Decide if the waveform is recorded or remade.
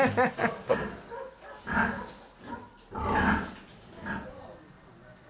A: recorded